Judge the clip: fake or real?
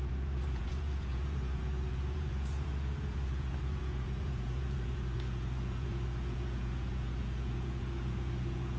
fake